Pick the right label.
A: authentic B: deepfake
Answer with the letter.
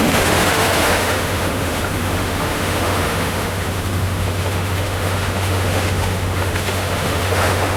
B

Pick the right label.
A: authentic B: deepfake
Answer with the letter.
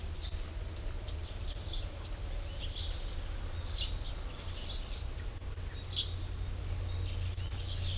A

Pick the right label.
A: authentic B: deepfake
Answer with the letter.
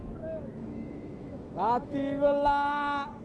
B